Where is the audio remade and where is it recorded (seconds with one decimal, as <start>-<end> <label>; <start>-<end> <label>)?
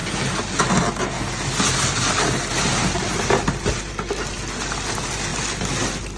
0.0-6.2 recorded